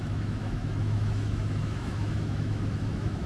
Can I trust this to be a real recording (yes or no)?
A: no